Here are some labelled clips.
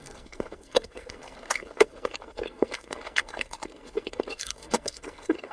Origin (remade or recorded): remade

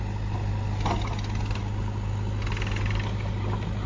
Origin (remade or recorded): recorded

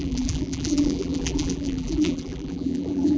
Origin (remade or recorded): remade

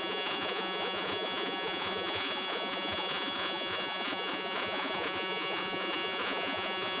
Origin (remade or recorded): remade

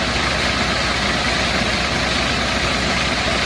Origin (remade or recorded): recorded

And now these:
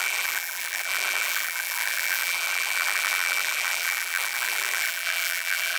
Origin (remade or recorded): remade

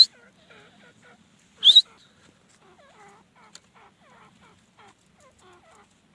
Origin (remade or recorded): recorded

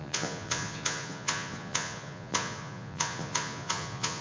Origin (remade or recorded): remade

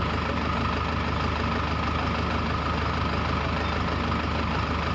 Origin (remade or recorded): recorded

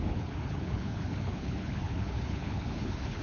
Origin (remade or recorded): remade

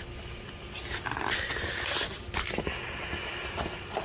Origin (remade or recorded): recorded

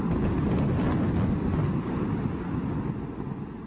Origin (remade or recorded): recorded